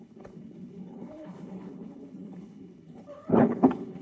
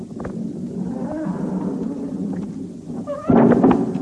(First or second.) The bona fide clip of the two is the second